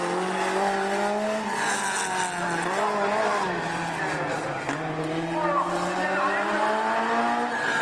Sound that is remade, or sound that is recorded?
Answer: recorded